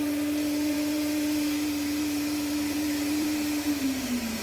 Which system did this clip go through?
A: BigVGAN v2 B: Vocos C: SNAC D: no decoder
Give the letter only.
A